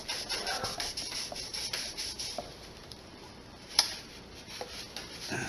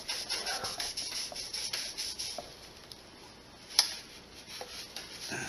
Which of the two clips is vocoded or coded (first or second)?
first